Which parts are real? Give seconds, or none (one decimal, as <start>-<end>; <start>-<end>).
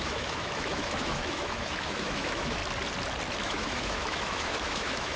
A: 2.6-3.4